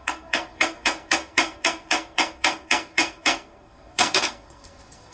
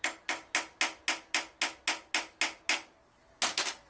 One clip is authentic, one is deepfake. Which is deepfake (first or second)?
first